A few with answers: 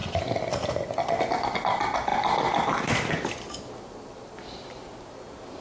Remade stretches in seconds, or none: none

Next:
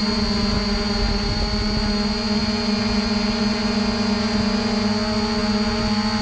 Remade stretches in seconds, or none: none

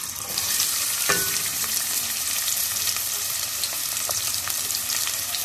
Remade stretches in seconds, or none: 0.0-1.5 (vocoder, BigVGAN v2); 2.0-5.4

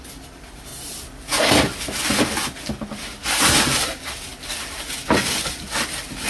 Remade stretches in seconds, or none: none

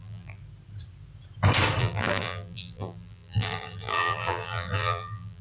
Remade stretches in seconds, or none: 0.0-0.4 (vocoder, BigVGAN v2); 1.8-5.4

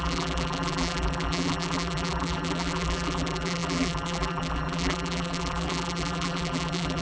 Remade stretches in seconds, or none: 0.0-7.0 (vocoder, BigVGAN v2)

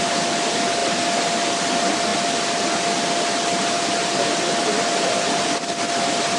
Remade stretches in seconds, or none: none

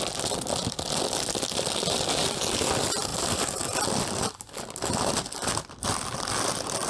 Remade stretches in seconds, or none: 3.1-3.6 (vocoder, BigVGAN v2)